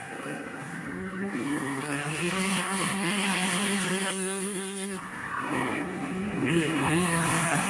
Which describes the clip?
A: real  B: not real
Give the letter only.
B